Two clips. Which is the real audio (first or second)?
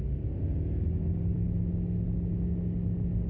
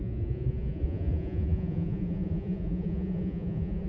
first